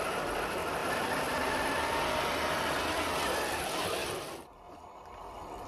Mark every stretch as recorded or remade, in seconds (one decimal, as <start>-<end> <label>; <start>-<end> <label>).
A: 0.0-5.7 recorded